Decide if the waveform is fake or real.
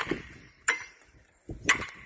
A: fake